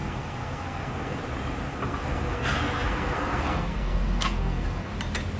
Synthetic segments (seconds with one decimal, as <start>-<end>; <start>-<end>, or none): 0.0-1.2; 1.7-4.9